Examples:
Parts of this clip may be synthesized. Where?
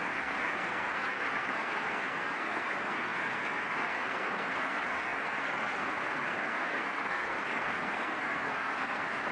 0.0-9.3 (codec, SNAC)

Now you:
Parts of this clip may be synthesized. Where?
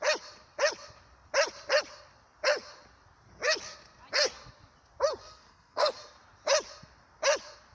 5.2-5.9 (codec, SNAC)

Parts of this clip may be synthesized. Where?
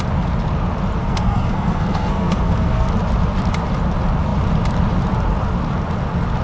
1.0-2.9 (codec, SNAC)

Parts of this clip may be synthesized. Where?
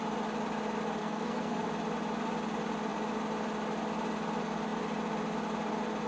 1.0-1.7 (codec, SNAC)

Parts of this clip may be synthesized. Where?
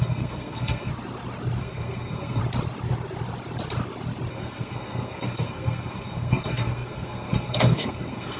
0.0-0.9 (codec, SNAC); 1.6-2.4; 4.3-8.4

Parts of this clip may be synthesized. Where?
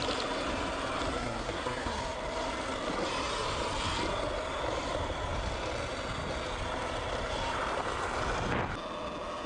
1.1-2.0 (codec, SNAC)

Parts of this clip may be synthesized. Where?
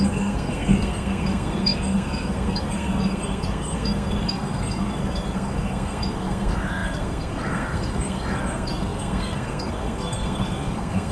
0.0-11.1 (codec, SNAC)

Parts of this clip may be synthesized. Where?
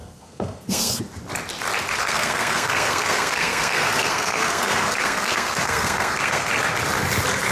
0.0-1.0 (codec, SNAC); 2.0-6.5